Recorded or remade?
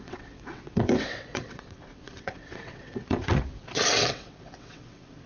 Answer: remade